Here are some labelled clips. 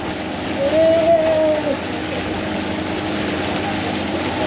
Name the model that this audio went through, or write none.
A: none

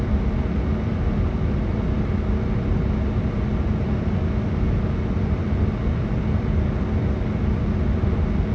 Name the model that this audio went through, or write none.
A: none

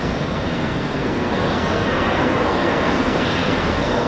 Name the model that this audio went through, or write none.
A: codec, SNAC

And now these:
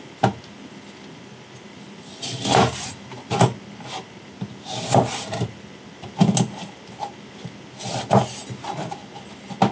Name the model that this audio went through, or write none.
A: none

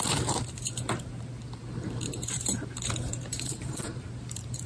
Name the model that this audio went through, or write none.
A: vocoder, BigVGAN v2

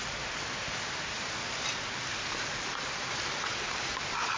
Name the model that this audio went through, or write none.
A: none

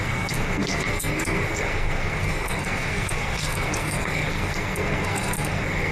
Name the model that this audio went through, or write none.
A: codec, SNAC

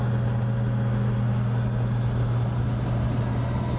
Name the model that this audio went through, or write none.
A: none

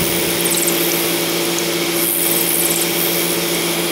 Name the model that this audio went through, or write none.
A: none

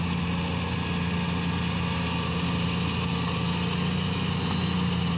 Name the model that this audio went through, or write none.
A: none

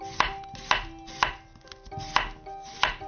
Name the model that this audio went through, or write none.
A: none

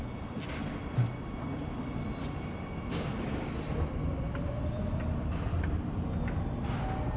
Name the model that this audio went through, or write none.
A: none